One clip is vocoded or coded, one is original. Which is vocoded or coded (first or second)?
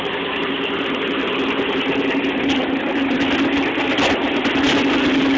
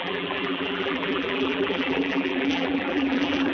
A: second